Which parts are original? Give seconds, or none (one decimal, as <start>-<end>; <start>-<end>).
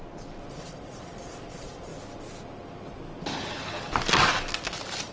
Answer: 0.0-0.5; 1.9-5.1